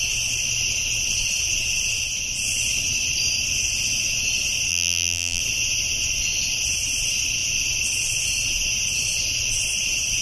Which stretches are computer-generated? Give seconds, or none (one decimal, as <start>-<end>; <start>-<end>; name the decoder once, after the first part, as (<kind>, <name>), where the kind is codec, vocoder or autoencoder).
4.7-5.4 (vocoder, BigVGAN v2)

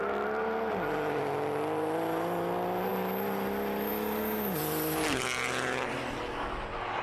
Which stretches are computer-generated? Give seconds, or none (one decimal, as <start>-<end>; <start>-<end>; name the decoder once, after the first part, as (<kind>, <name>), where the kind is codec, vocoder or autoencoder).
none

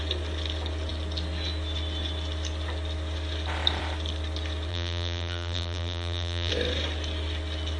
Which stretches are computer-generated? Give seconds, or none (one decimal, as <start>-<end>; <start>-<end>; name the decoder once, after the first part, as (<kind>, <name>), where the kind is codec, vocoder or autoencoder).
4.7-6.5 (vocoder, BigVGAN v2)